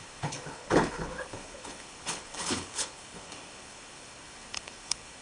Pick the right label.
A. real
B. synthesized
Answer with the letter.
B